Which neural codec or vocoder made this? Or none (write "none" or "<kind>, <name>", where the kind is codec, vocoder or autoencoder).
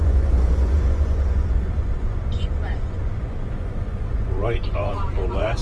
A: vocoder, Vocos